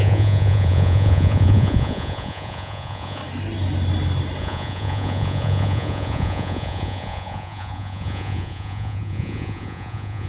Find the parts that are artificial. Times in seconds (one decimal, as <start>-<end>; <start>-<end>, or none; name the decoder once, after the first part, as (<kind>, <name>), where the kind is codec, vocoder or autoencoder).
0.0-3.2 (vocoder, Vocos); 4.4-10.3